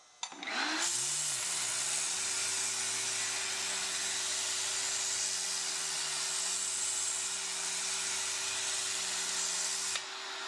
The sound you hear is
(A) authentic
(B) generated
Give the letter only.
A